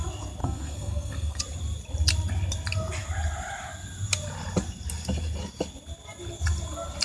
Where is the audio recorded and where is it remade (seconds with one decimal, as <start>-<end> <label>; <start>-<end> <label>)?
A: 0.0-0.4 recorded; 0.4-1.4 remade; 1.4-7.0 recorded